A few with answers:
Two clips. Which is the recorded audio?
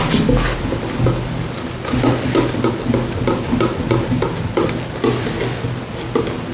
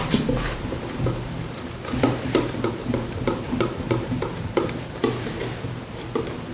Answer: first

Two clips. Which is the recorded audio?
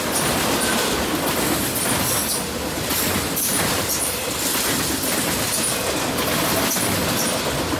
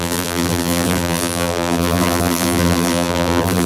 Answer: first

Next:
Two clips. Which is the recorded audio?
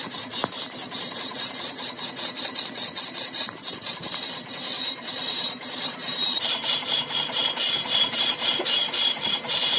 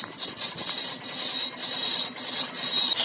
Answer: second